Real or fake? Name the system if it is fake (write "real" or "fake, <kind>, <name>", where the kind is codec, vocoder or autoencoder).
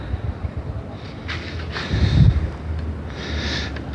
fake, vocoder, BigVGAN v2